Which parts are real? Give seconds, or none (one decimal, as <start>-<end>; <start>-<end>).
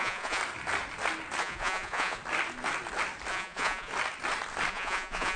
0.4-1.4; 2.2-3.3; 3.9-4.7